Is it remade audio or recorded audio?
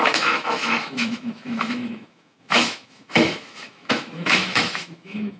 remade